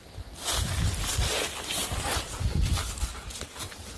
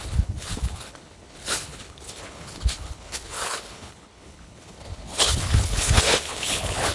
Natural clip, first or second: first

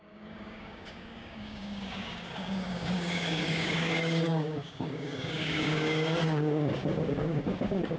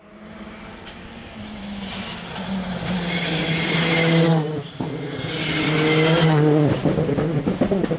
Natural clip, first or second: second